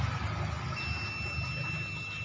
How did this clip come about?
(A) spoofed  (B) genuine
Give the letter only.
B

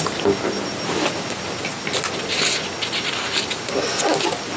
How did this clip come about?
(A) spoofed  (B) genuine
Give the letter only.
B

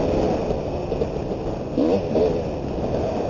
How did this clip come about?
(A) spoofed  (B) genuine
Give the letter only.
B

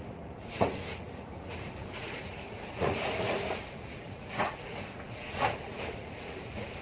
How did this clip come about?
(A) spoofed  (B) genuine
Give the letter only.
A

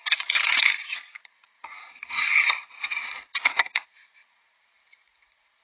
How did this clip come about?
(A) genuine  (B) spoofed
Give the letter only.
B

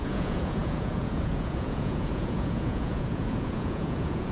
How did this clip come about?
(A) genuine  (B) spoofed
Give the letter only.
B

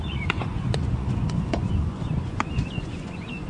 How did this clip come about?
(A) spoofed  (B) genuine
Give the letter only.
A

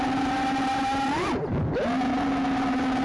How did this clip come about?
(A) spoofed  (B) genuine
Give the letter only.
B